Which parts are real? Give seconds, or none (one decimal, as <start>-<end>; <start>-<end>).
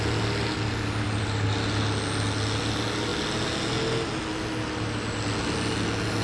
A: 0.0-6.2